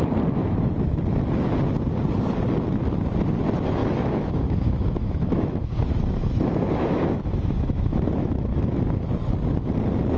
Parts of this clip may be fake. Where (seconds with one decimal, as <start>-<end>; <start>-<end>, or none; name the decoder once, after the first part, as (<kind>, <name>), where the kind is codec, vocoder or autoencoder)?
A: 0.4-1.0 (autoencoder, DAC-VAE); 3.8-9.0